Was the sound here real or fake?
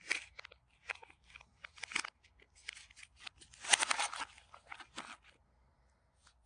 real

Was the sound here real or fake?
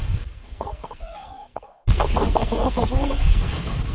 fake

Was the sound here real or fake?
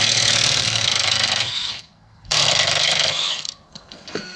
fake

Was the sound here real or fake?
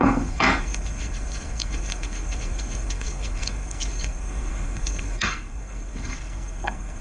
fake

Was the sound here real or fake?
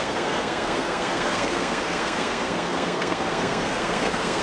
fake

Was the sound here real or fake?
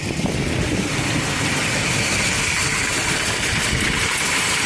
real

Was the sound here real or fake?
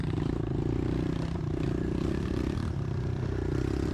real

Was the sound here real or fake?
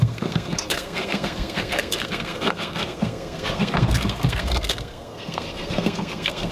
fake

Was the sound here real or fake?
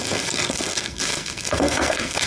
fake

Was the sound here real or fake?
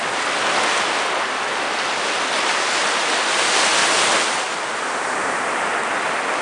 real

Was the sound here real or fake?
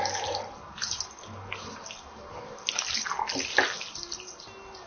real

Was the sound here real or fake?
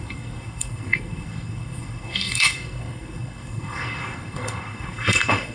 fake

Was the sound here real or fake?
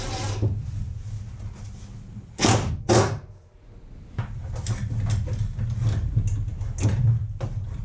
real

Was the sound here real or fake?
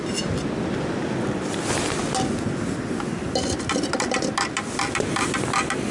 real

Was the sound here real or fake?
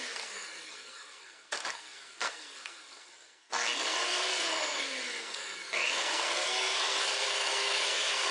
fake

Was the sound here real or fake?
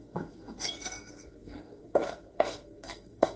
fake